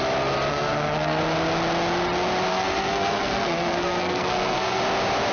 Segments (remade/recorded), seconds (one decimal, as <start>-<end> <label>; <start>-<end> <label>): 0.0-0.5 recorded; 0.5-1.2 remade; 1.2-2.5 recorded; 2.5-4.8 remade; 4.8-5.3 recorded